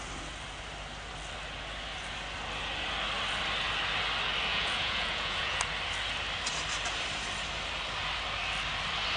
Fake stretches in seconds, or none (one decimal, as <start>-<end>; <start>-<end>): 4.5-5.6